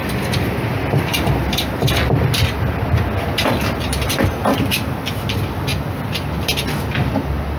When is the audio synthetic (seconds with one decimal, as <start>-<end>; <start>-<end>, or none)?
none